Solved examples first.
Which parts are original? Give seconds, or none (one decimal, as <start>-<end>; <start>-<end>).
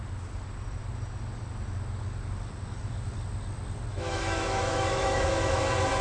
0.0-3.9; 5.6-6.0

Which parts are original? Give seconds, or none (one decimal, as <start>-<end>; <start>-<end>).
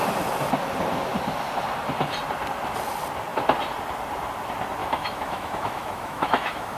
0.0-4.8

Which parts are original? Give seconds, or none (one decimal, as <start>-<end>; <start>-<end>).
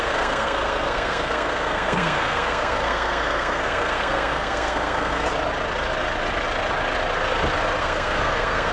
5.3-7.8